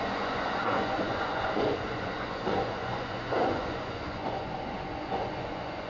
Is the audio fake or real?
fake